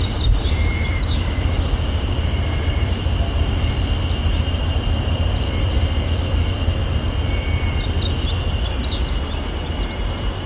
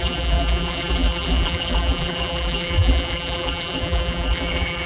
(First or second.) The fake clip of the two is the second